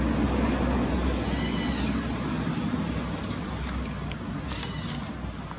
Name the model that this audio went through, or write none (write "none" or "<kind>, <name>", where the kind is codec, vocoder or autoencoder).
none